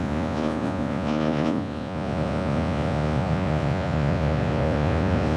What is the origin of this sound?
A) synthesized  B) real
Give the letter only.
A